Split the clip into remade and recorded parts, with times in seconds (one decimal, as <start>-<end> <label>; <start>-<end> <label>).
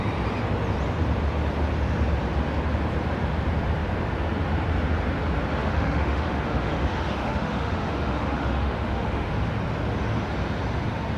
0.0-5.6 recorded; 5.6-9.5 remade; 9.5-11.2 recorded